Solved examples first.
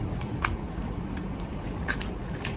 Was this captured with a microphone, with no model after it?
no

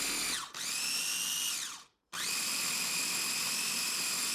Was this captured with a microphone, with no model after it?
yes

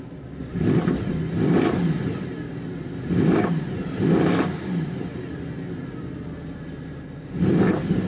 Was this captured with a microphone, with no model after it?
yes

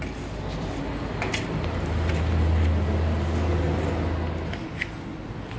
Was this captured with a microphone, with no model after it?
yes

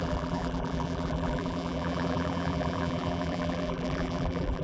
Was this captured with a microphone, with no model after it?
no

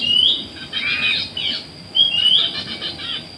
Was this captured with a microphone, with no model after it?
yes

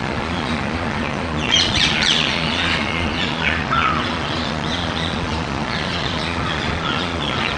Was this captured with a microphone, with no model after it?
no